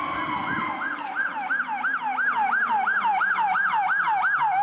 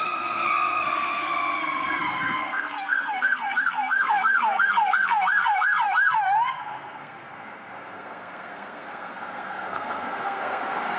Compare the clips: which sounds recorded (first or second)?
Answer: first